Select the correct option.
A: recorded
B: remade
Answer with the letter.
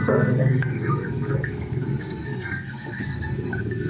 B